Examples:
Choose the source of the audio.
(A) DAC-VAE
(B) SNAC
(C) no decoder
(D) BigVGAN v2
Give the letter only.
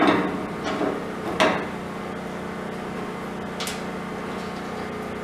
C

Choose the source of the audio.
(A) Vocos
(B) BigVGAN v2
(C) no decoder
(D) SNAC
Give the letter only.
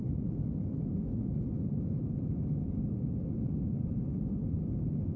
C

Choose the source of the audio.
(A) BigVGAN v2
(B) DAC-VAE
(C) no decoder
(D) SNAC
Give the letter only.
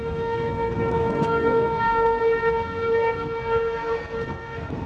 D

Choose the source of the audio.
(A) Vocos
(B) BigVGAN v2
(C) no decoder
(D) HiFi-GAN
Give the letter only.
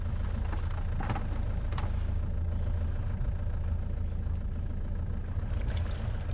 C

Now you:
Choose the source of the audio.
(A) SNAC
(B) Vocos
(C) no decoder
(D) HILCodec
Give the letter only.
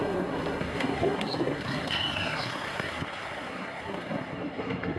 A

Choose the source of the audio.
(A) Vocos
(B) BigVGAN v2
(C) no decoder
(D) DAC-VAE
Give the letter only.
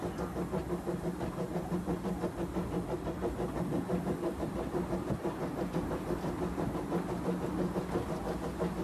C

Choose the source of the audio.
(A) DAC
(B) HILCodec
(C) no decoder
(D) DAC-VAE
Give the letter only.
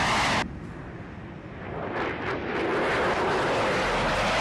C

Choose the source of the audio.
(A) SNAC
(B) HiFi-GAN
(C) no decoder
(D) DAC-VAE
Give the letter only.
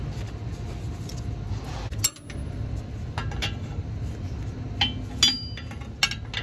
C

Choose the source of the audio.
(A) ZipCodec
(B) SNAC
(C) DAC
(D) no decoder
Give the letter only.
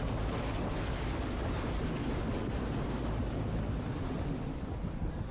D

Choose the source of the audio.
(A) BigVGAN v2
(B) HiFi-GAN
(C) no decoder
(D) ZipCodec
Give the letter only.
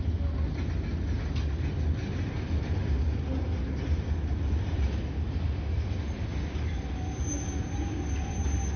C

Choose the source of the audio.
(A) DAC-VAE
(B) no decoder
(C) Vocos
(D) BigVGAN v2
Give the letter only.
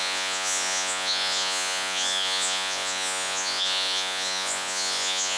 C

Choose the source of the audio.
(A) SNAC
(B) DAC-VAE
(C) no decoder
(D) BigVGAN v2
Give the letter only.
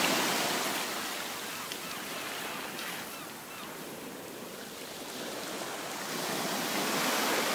C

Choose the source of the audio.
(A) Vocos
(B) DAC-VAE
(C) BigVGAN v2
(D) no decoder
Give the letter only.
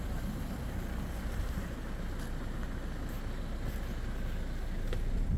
D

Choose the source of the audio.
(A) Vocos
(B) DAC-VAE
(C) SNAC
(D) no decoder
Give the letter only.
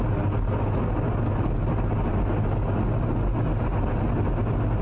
D